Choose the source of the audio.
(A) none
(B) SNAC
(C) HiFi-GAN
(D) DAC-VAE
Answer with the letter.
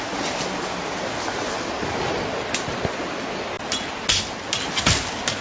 A